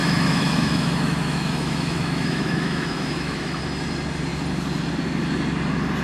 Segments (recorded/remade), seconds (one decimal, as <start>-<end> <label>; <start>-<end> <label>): 0.0-3.6 remade; 3.6-6.0 recorded